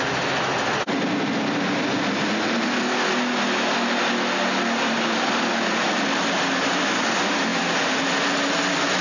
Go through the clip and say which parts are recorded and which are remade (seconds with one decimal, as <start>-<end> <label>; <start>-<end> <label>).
0.0-9.0 recorded